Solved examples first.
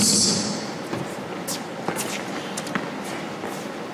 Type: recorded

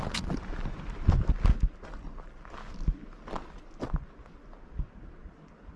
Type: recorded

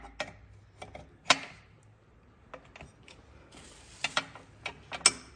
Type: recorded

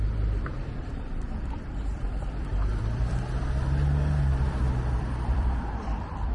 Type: remade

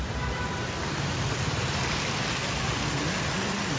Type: remade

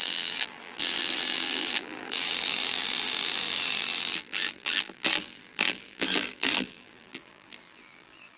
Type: remade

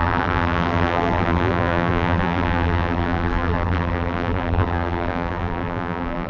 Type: remade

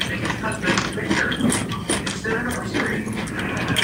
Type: recorded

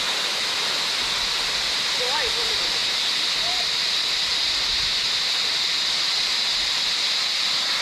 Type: recorded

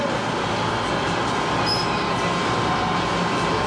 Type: recorded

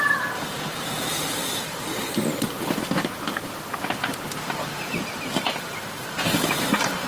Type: remade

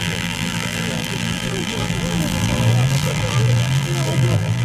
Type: remade